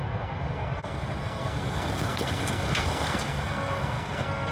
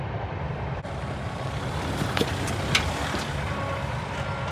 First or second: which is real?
second